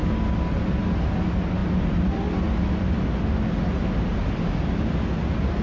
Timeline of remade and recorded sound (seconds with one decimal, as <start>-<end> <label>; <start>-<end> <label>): 0.0-5.6 recorded